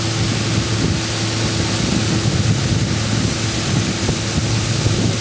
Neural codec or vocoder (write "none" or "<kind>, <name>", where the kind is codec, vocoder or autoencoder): none